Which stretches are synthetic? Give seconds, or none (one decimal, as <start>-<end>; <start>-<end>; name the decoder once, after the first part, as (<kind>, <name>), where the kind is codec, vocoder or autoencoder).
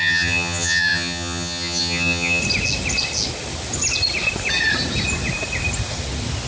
0.0-2.4 (vocoder, HiFi-GAN)